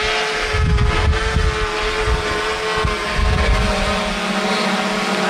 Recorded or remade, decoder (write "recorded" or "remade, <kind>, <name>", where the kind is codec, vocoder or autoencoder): recorded